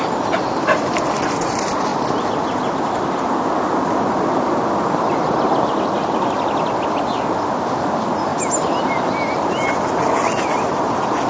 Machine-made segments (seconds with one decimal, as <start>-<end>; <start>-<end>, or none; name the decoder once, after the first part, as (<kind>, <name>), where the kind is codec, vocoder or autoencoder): none